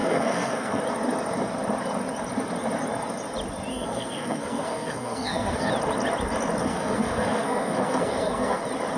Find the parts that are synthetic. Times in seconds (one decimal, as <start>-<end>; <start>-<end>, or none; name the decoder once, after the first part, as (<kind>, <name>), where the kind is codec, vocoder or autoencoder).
0.0-0.8 (codec, SNAC); 3.7-5.7; 6.6-8.6